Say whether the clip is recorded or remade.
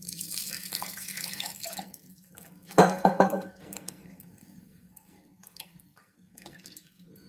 remade